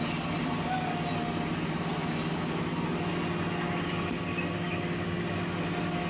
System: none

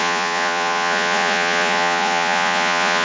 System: vocoder, Vocos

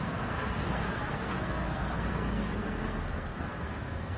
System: codec, SNAC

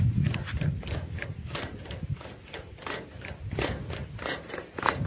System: none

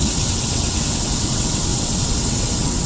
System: vocoder, WaveNeXt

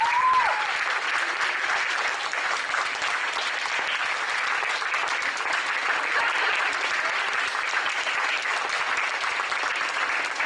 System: none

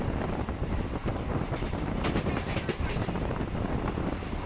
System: none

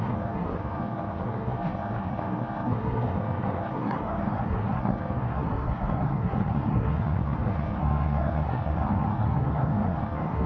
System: codec, SNAC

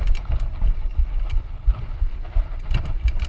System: none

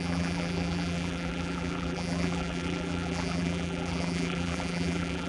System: vocoder, BigVGAN v2